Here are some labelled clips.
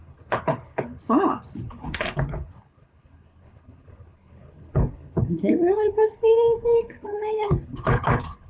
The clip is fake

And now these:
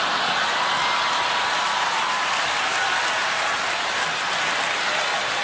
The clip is real